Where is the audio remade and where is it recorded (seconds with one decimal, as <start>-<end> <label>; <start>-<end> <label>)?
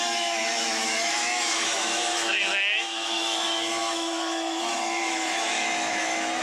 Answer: 0.0-6.4 remade